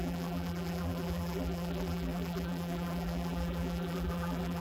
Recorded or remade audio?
remade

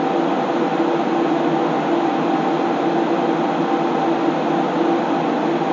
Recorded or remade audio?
recorded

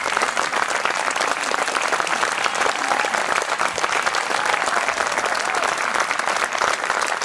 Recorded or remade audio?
recorded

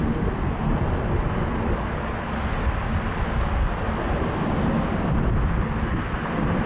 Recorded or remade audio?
recorded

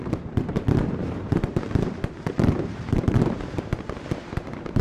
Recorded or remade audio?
remade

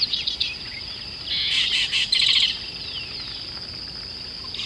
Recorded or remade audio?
recorded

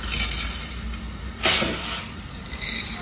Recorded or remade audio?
recorded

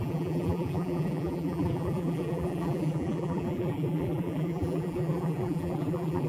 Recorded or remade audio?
remade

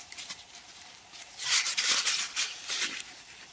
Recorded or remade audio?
remade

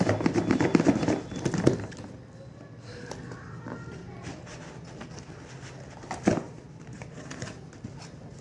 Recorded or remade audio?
recorded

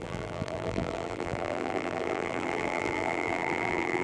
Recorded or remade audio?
remade